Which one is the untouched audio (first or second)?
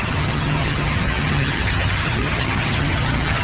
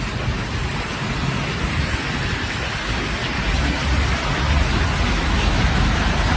second